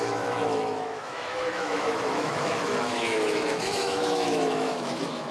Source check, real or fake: fake